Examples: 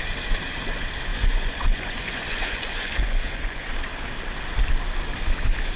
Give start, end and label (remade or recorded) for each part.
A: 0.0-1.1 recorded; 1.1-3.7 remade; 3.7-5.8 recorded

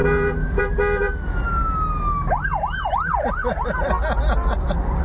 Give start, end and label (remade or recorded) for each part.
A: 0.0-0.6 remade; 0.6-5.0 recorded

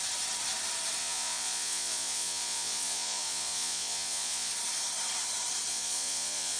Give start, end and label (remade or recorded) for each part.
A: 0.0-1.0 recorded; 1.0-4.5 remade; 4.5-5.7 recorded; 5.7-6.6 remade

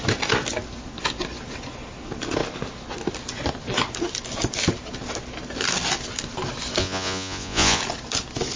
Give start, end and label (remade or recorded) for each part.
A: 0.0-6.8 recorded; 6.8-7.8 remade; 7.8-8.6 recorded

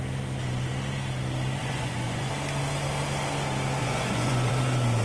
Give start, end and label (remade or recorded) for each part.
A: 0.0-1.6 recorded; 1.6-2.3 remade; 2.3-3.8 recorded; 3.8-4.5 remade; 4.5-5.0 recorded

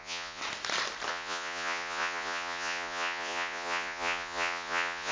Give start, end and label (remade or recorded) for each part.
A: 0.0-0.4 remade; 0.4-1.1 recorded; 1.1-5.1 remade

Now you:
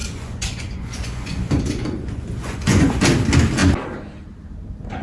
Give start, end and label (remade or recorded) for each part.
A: 0.0-3.0 remade; 3.0-5.0 recorded